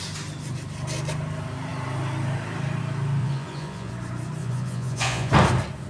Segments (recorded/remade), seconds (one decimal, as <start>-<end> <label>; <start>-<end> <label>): 0.0-3.2 recorded; 3.2-3.9 remade; 3.9-4.4 recorded; 4.4-5.3 remade; 5.3-5.9 recorded